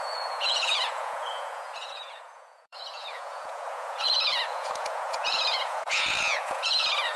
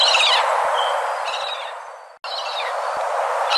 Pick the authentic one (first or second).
second